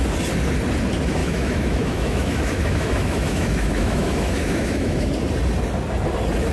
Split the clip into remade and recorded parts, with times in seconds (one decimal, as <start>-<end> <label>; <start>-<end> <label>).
0.0-1.2 recorded; 1.2-5.1 remade; 5.1-6.5 recorded